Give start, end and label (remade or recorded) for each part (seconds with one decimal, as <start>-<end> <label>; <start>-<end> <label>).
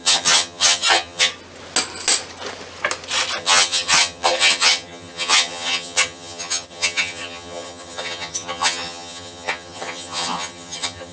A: 0.0-1.3 remade; 1.3-3.4 recorded; 3.4-11.1 remade